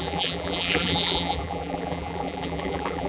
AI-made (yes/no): yes